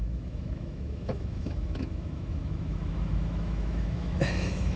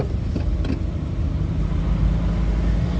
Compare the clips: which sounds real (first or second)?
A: second